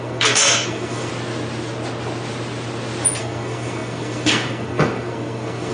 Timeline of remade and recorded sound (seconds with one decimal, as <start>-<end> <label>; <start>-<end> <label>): 0.0-1.1 remade; 1.1-3.2 recorded; 3.2-5.7 remade